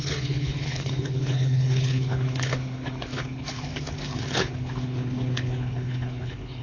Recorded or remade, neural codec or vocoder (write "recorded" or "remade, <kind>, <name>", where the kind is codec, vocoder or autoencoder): remade, codec, HILCodec